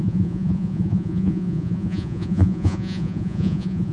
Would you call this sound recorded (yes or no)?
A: no